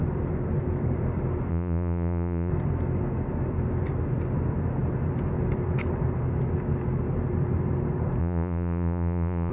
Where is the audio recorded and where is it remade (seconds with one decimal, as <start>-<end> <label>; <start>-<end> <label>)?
0.0-1.5 recorded; 1.5-2.5 remade; 2.5-8.2 recorded; 8.2-9.5 remade